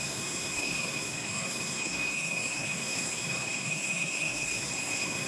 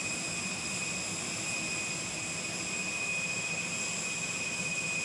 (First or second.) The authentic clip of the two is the second